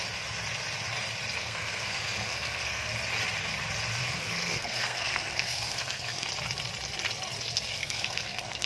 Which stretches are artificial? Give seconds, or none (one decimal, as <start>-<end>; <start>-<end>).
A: 1.4-2.9; 4.0-6.3; 7.8-8.7